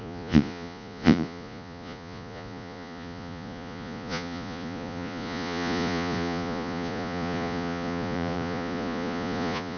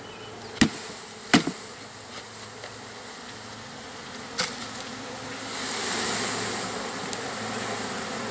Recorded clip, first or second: second